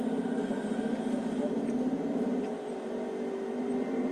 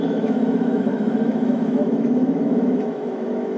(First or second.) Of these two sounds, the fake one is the second